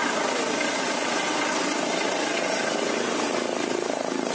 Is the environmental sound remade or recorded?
recorded